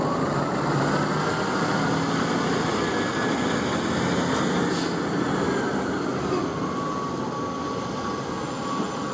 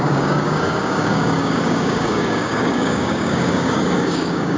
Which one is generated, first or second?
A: second